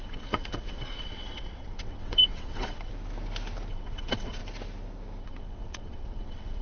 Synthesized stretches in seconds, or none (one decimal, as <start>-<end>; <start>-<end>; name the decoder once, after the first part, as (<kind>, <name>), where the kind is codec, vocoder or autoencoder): 0.0-2.9 (vocoder, WaveNeXt); 3.7-4.4; 5.2-6.6